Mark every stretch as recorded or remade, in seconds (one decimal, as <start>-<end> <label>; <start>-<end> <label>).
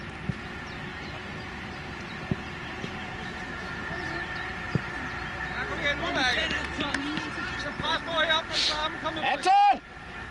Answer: 0.0-0.9 recorded; 0.9-5.4 remade; 5.4-6.3 recorded; 6.3-8.4 remade; 8.4-10.3 recorded